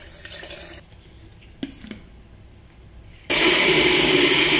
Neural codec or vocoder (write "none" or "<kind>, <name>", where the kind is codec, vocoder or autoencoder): none